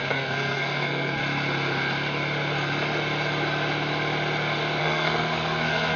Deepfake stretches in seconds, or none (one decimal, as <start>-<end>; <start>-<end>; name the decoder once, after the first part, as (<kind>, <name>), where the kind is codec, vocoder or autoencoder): 0.0-1.2 (codec, SNAC); 4.8-6.0